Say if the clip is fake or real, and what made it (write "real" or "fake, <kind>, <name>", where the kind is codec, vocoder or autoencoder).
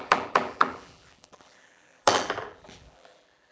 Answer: fake, vocoder, BigVGAN v2